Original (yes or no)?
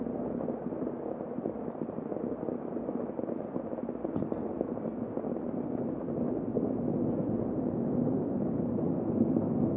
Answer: yes